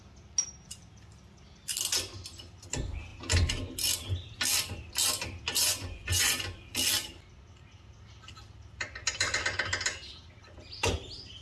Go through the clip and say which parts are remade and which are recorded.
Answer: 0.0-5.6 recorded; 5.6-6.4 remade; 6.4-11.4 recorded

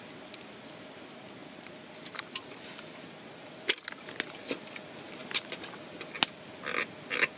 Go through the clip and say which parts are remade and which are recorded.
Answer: 0.0-7.4 recorded

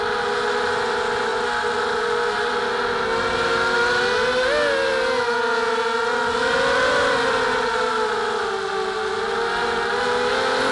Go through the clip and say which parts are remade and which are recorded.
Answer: 0.0-10.7 recorded

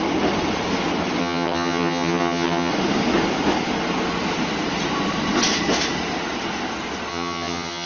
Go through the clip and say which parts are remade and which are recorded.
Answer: 0.0-1.2 recorded; 1.2-2.7 remade; 2.7-7.1 recorded; 7.1-7.9 remade

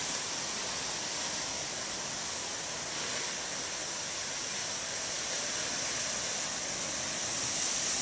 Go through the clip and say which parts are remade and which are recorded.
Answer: 0.0-4.6 recorded; 4.6-5.7 remade; 5.7-8.0 recorded